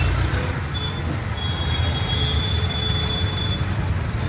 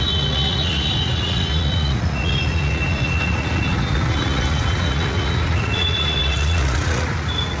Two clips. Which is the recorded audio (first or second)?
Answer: first